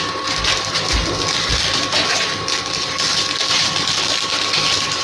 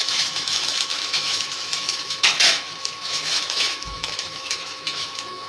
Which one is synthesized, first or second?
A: second